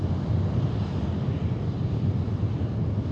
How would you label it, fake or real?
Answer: real